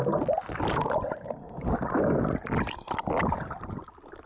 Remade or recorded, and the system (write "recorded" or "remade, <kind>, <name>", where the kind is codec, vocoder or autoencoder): recorded